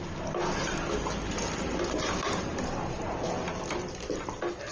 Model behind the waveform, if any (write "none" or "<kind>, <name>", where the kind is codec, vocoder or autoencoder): none